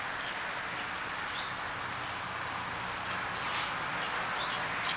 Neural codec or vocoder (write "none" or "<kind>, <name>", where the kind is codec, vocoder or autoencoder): none